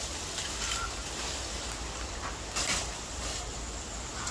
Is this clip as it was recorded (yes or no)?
yes